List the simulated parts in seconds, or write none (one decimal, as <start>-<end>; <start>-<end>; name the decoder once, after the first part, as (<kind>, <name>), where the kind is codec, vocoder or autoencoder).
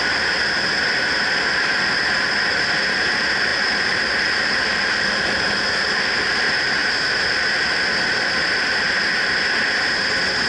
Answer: 3.5-6.0 (vocoder, BigVGAN v2); 6.8-7.4